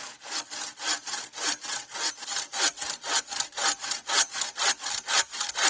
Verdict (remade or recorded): recorded